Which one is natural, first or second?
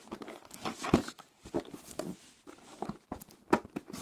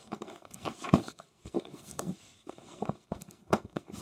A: first